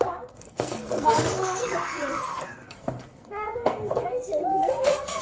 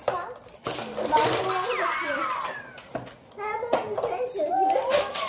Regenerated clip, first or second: first